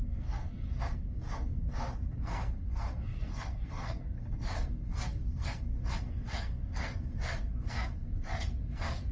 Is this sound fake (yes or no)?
yes